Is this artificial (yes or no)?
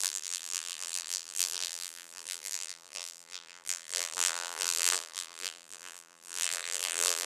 yes